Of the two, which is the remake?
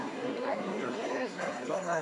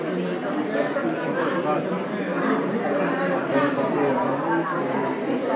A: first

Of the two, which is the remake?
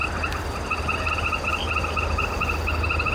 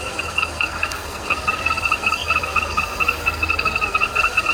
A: second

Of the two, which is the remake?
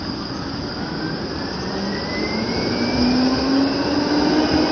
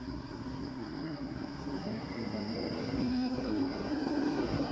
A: second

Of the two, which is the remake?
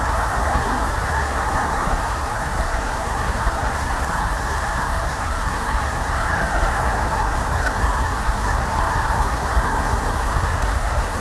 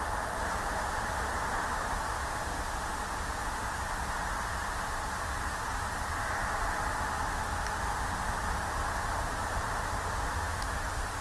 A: first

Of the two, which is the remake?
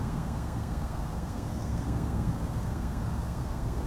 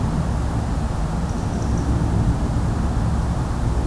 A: first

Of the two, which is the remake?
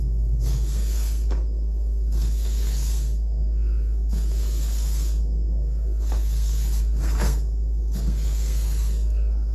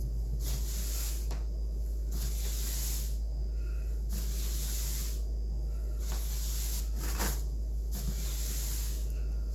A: first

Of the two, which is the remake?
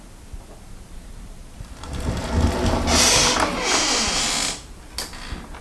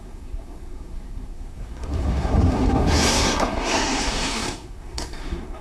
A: second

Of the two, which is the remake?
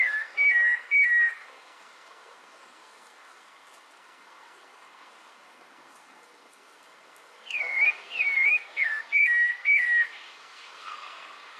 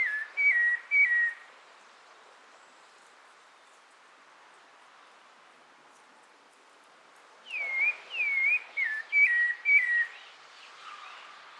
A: first